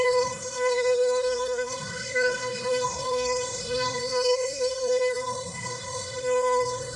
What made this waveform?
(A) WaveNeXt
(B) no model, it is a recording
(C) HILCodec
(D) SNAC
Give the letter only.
D